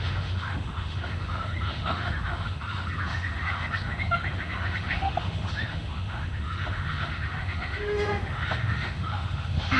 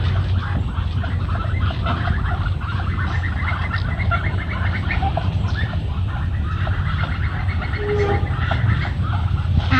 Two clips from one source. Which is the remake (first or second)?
first